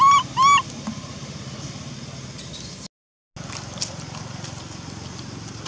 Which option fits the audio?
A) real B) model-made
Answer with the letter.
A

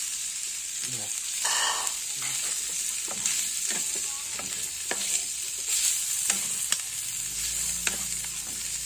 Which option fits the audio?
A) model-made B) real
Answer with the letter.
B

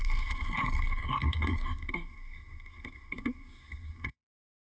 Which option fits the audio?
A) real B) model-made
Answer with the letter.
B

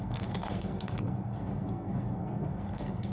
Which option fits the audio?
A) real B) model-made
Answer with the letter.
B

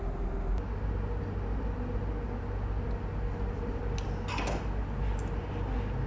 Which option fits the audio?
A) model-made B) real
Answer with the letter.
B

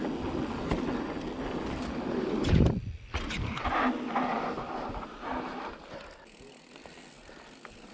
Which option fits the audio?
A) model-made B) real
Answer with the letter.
B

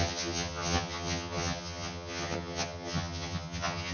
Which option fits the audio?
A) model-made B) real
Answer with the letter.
A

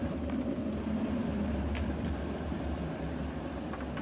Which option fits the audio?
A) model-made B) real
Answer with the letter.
B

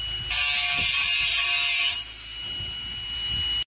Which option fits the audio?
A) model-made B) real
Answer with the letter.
B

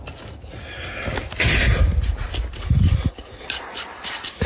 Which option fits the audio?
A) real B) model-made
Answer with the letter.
A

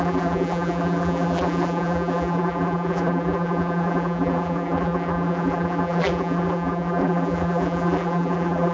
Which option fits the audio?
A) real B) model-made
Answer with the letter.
B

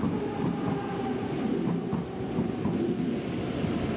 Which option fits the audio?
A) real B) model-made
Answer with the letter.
A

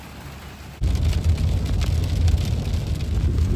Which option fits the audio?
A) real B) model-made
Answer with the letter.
A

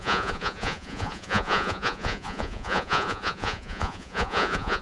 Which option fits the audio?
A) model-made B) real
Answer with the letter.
A